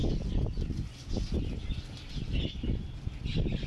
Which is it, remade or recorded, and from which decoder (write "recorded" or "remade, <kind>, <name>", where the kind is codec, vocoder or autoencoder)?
recorded